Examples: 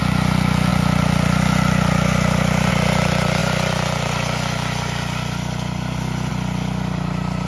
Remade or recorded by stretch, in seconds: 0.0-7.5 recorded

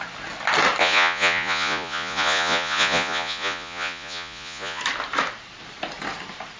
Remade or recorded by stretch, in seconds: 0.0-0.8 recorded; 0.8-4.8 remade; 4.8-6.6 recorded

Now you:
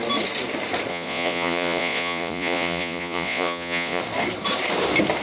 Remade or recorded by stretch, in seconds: 0.0-0.9 recorded; 0.9-4.0 remade; 4.0-5.2 recorded

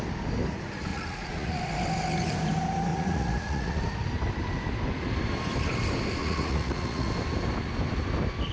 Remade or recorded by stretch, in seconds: 0.0-0.9 recorded; 0.9-1.6 remade; 1.6-2.9 recorded; 2.9-3.8 remade; 3.8-6.2 recorded; 6.2-7.1 remade; 7.1-8.5 recorded